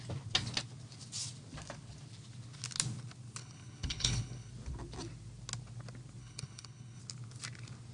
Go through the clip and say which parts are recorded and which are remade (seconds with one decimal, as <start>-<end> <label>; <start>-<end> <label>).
0.0-3.4 recorded; 3.4-4.5 remade; 4.5-6.2 recorded; 6.2-7.0 remade; 7.0-7.9 recorded